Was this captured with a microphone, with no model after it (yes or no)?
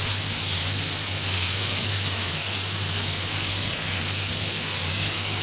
no